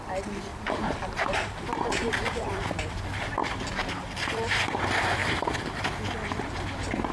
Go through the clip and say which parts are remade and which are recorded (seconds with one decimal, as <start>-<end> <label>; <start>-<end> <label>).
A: 0.0-0.5 recorded; 0.5-1.6 remade; 1.6-2.0 recorded; 2.0-2.6 remade; 2.6-3.4 recorded; 3.4-4.7 remade; 4.7-5.2 recorded; 5.2-5.7 remade; 5.7-7.1 recorded